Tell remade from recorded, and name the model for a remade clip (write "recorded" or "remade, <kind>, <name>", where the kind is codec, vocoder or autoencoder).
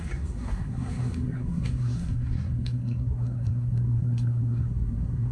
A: remade, codec, SNAC